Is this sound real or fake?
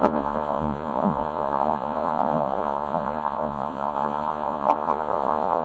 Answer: fake